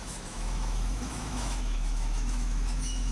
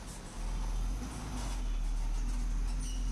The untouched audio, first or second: second